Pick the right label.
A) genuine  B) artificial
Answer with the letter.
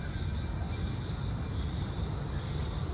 A